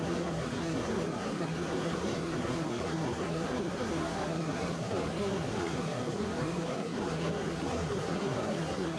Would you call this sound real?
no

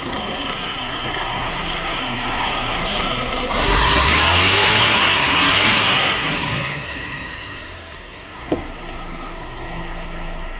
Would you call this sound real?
no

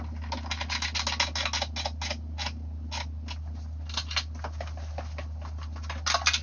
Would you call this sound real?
yes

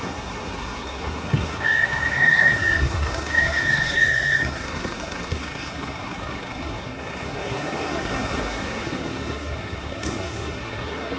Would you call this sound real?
no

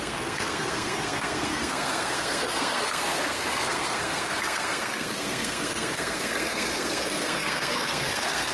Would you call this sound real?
no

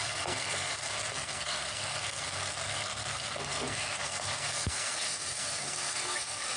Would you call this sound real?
no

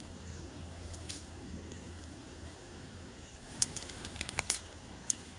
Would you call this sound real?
no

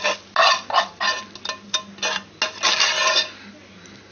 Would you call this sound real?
yes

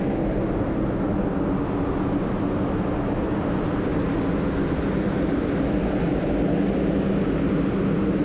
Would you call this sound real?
yes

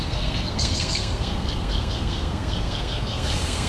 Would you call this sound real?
no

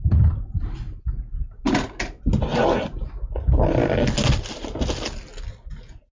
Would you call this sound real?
yes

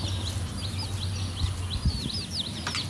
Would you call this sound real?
yes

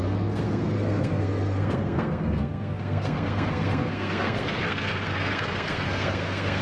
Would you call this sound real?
no